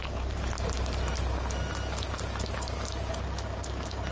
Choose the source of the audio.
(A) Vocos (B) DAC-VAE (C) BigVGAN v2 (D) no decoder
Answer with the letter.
D